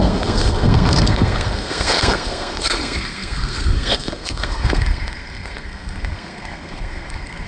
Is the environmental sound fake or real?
fake